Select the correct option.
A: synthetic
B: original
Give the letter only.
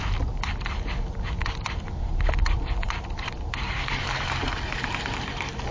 B